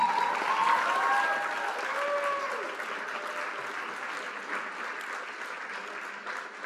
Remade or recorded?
recorded